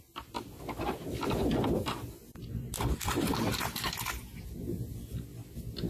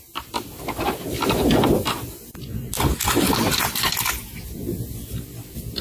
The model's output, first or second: second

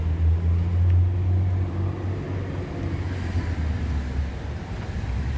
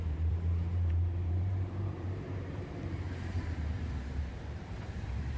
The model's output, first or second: second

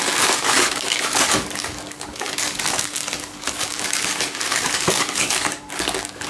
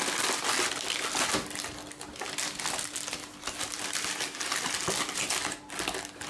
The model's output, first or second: first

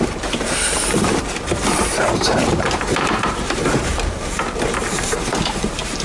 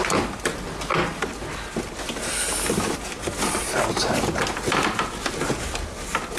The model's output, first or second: first